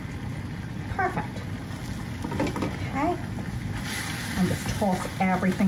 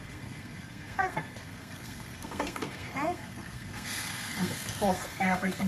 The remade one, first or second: second